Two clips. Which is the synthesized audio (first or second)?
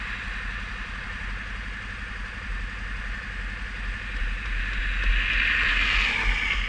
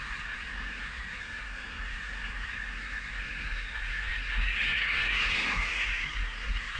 second